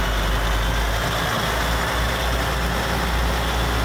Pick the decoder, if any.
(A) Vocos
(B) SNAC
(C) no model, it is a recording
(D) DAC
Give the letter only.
C